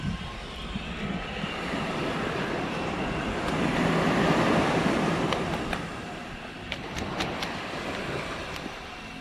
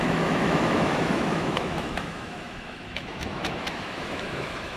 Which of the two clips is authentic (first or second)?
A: first